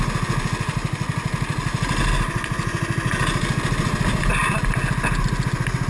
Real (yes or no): yes